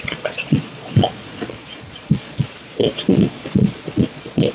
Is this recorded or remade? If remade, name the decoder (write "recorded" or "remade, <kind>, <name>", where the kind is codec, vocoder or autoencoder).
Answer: remade, vocoder, Vocos